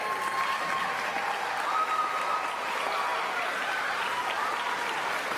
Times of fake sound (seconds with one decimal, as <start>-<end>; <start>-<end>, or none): none